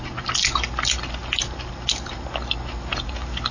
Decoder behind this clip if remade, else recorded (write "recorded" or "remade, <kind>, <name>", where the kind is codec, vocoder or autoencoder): recorded